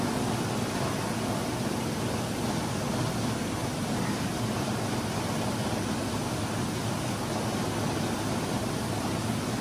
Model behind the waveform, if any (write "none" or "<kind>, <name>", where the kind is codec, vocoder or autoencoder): none